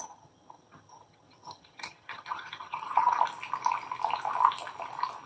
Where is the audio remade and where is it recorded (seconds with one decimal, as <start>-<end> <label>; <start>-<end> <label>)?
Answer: 0.0-3.2 remade; 3.2-5.3 recorded